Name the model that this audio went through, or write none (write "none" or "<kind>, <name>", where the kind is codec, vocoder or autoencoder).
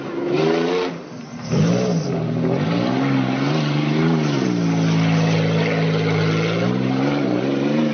none